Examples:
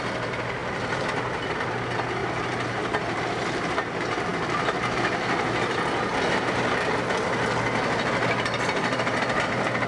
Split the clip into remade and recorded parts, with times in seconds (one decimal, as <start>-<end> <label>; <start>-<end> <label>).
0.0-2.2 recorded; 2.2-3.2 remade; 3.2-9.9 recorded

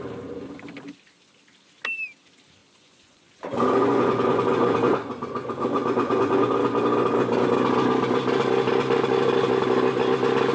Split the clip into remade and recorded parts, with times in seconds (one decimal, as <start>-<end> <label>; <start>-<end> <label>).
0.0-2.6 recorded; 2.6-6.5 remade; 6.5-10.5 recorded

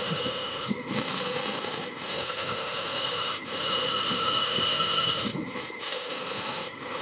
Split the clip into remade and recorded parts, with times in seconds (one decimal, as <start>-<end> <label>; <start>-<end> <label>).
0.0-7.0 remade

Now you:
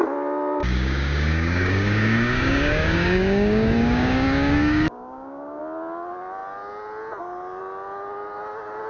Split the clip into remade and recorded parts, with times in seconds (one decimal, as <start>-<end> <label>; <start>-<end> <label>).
0.0-0.6 recorded; 0.6-5.6 remade; 5.6-8.9 recorded

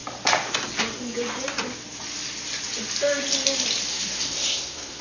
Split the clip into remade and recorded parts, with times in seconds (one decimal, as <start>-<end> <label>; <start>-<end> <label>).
0.0-3.9 recorded; 3.9-5.0 remade